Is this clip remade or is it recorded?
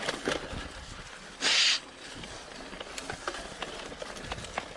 recorded